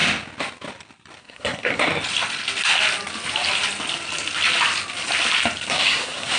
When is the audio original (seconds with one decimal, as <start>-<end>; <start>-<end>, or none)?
0.0-1.2; 1.9-5.7